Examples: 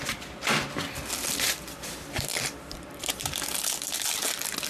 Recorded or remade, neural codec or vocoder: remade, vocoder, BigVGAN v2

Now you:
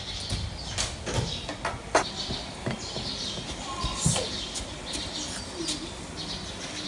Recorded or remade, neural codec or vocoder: recorded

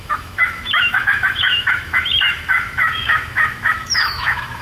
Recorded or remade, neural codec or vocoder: remade, autoencoder, DAC-VAE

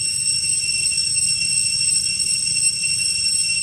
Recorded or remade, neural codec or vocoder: recorded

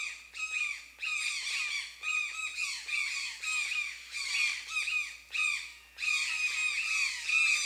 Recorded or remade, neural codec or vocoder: recorded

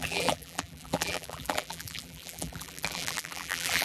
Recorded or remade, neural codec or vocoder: remade, vocoder, BigVGAN v2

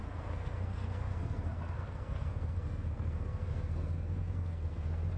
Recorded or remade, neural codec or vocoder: remade, codec, SNAC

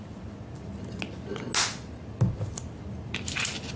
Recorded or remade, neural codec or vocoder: recorded